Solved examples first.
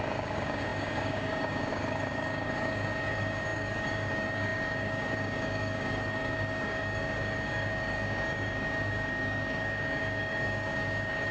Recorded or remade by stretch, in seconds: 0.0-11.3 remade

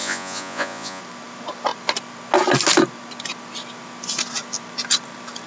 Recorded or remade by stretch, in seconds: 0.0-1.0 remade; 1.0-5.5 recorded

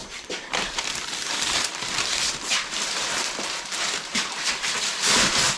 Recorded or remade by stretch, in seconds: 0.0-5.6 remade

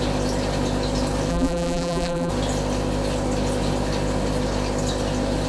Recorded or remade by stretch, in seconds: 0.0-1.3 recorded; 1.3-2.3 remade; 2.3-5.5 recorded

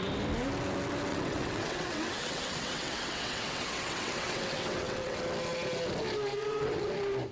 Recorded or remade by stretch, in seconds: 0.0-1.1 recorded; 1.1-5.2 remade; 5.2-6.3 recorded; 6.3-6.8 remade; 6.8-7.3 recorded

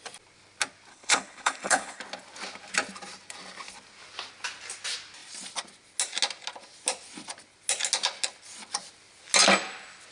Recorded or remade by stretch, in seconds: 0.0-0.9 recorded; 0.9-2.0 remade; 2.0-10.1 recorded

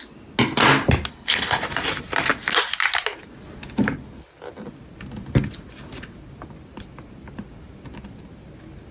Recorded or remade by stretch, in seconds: 0.0-1.1 recorded; 1.1-1.6 remade; 1.6-8.9 recorded